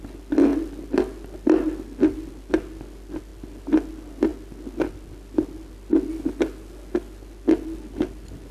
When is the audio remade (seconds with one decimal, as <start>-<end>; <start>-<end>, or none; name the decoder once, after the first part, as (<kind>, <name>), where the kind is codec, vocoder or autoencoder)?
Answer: 0.5-2.1 (vocoder, BigVGAN v2); 3.3-3.9